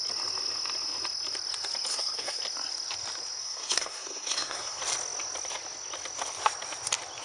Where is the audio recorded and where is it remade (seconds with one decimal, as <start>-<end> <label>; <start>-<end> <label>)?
0.0-1.9 recorded; 1.9-2.4 remade; 2.4-3.4 recorded; 3.4-4.8 remade; 4.8-7.2 recorded